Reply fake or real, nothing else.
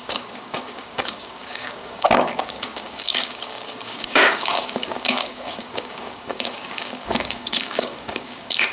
fake